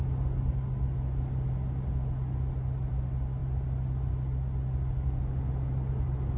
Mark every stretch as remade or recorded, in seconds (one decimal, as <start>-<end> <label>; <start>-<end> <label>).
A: 0.0-6.4 recorded

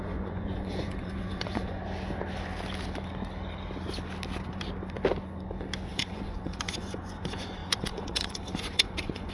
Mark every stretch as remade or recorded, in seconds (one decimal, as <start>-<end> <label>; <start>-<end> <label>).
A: 0.0-1.8 remade; 1.8-5.9 recorded; 5.9-9.3 remade